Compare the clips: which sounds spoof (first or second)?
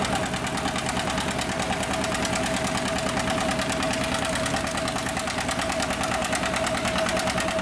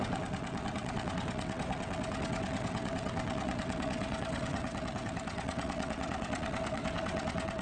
second